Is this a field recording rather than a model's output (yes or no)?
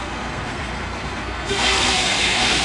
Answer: no